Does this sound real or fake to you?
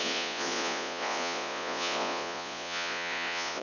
fake